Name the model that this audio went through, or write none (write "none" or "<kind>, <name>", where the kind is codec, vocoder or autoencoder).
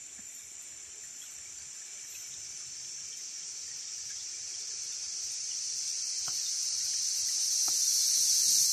none